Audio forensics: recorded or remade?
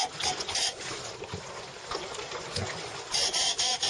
remade